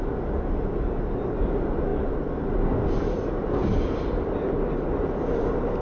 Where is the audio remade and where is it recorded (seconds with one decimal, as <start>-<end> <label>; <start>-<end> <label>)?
0.0-5.8 recorded